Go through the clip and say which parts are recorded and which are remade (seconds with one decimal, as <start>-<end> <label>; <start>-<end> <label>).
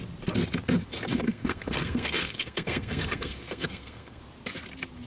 0.0-1.1 recorded; 1.1-4.2 remade; 4.2-5.1 recorded